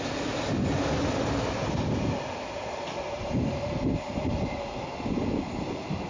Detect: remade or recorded recorded